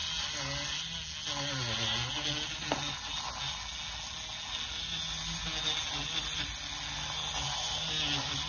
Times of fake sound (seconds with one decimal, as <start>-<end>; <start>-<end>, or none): none